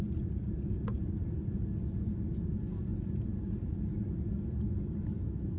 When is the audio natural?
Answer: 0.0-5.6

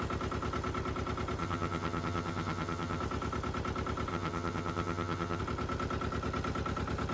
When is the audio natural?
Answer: 0.0-1.4; 3.0-4.1; 5.4-7.1

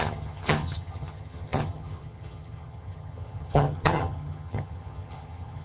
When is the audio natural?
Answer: none

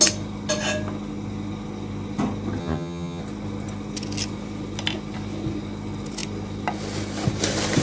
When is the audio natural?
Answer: 0.0-2.6; 3.2-7.8

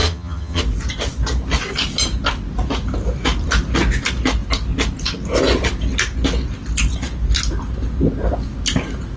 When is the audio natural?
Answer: 0.6-9.2

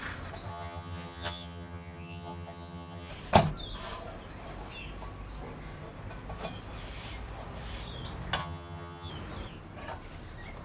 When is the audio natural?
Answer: 0.0-0.5; 3.1-8.4; 9.1-10.6